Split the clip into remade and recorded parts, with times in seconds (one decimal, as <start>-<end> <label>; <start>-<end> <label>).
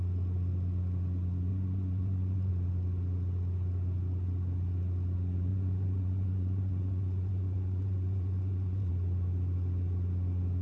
0.0-1.5 recorded; 1.5-2.5 remade; 2.5-5.5 recorded; 5.5-8.9 remade; 8.9-10.6 recorded